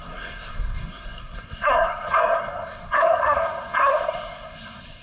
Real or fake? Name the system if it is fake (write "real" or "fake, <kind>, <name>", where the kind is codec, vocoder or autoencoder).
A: fake, codec, SNAC